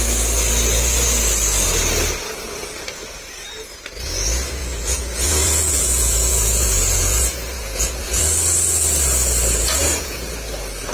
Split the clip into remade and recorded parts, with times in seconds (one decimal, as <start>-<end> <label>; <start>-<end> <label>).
0.0-4.6 recorded; 4.6-8.2 remade; 8.2-9.8 recorded; 9.8-10.3 remade; 10.3-10.9 recorded